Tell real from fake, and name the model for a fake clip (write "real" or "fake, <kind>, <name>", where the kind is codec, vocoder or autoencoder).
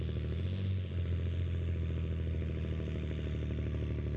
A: real